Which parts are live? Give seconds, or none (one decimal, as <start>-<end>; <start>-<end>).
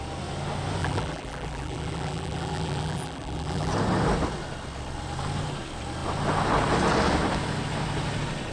0.0-0.8; 3.7-8.5